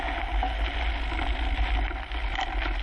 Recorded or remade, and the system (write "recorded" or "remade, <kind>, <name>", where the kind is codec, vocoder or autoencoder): recorded